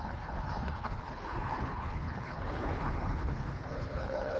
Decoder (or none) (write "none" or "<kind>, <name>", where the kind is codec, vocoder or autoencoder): codec, HILCodec